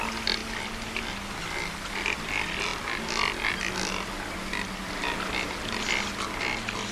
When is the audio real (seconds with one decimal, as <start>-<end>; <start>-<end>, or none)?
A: 0.0-6.9